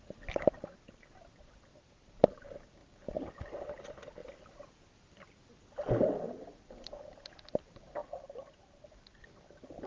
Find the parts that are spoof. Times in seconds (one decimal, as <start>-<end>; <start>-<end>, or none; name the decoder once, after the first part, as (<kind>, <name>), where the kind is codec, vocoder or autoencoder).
none

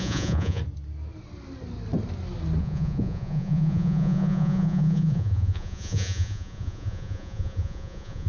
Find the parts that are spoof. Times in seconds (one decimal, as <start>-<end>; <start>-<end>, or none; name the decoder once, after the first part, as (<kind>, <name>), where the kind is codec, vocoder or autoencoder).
0.0-0.6 (vocoder, Vocos); 2.6-8.3